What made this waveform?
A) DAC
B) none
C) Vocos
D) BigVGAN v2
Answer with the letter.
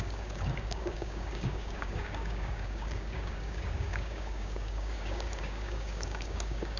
A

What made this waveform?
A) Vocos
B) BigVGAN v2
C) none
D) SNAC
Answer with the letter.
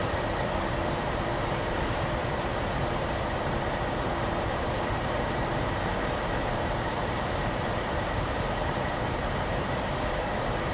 B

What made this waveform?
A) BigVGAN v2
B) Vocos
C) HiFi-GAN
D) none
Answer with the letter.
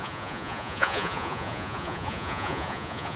B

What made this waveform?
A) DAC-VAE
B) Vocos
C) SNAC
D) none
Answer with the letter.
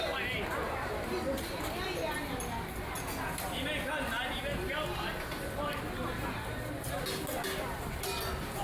D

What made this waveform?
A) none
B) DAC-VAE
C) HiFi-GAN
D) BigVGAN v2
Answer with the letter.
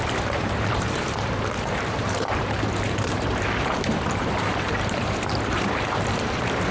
D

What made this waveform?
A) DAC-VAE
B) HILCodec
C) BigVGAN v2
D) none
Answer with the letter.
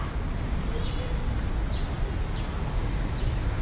D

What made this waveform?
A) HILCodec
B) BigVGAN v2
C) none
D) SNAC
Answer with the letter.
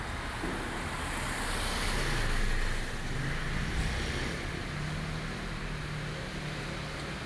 C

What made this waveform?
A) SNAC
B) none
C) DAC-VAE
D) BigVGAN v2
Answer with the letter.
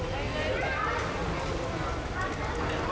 B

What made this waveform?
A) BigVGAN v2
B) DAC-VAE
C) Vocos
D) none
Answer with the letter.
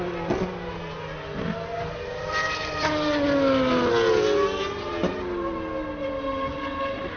D